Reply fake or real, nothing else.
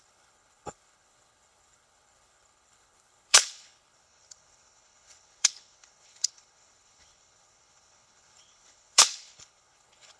fake